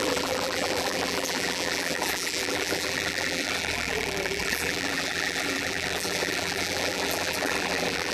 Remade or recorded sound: remade